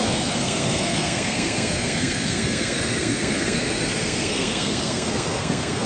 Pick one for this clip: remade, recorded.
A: remade